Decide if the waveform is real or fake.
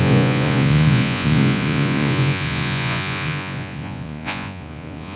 fake